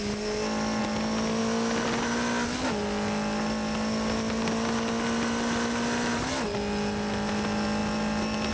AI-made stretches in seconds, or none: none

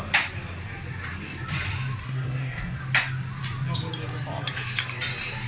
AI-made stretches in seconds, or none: 2.0-2.8 (codec, SNAC)

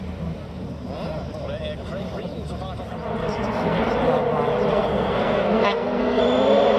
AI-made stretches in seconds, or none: 3.2-3.9 (codec, SNAC); 4.7-6.2

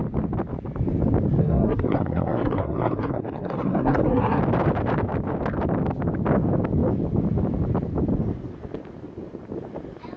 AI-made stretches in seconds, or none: 1.4-4.4 (codec, SNAC)

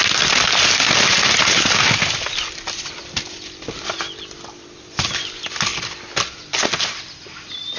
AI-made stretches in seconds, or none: none

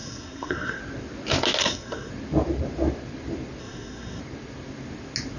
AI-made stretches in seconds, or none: 0.0-0.8 (codec, SNAC); 1.6-2.1; 3.6-4.2

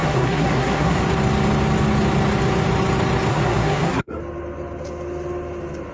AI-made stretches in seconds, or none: 0.0-1.0 (codec, SNAC); 3.3-4.2

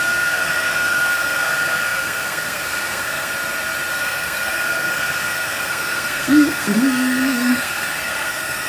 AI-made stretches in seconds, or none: 0.0-3.3 (codec, SNAC); 3.9-8.7